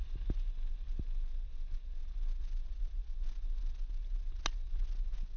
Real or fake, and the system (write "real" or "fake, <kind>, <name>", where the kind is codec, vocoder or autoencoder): real